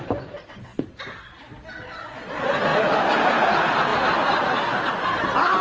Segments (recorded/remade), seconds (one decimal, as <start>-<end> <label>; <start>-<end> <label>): 0.0-5.6 recorded